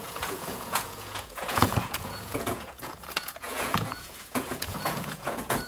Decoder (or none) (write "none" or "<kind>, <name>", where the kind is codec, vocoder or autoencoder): vocoder, Vocos